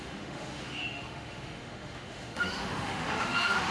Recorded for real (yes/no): no